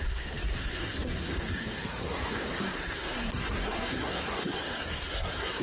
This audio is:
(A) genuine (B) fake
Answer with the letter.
B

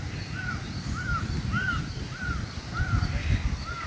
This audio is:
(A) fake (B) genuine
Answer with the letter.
B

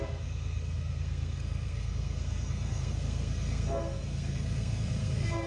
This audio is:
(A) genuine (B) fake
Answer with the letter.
B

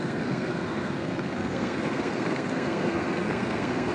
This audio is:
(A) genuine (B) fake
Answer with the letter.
B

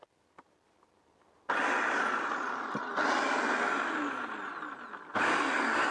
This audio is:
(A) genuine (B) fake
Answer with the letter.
A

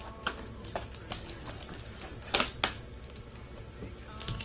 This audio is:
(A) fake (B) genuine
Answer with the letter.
B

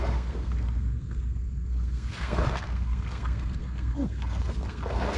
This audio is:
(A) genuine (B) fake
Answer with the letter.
B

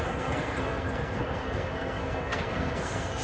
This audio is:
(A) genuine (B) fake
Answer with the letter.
B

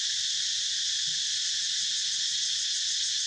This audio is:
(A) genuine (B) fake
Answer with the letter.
A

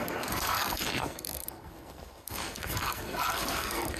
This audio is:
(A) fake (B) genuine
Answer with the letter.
A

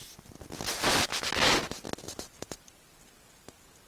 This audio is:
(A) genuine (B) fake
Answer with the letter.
A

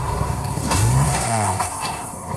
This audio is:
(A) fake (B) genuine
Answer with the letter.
A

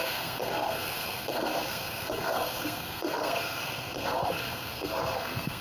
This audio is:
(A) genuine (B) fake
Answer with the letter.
B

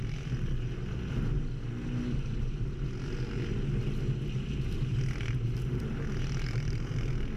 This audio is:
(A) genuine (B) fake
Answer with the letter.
A